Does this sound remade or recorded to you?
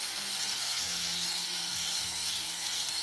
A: remade